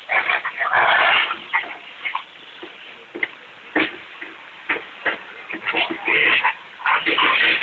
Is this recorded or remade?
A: recorded